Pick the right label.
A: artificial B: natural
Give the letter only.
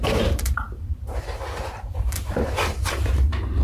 A